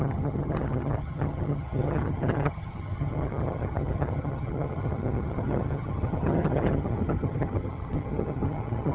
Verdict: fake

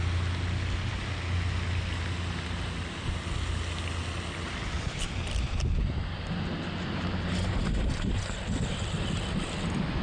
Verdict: real